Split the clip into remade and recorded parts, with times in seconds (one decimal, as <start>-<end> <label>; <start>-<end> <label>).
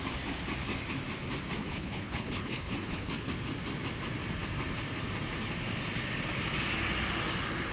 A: 0.0-1.6 recorded; 1.6-3.3 remade; 3.3-7.7 recorded